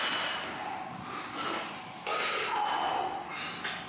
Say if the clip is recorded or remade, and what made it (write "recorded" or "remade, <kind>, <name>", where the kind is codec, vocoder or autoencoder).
recorded